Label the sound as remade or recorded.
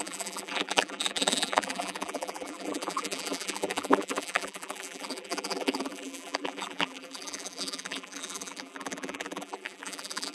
remade